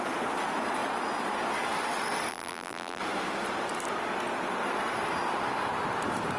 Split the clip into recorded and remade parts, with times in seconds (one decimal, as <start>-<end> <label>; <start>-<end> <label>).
0.0-2.3 recorded; 2.3-3.0 remade; 3.0-6.4 recorded

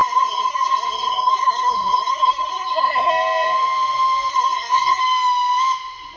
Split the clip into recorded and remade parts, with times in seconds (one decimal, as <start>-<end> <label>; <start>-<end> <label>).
0.0-3.1 remade; 3.1-4.3 recorded; 4.3-5.0 remade; 5.0-6.2 recorded

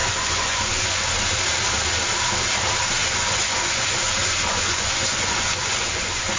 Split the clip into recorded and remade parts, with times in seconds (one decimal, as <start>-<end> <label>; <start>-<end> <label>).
0.0-1.0 remade; 1.0-3.0 recorded; 3.0-6.4 remade

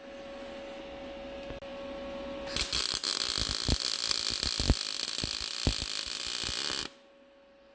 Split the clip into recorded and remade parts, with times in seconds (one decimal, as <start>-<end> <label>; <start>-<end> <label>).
0.0-7.7 recorded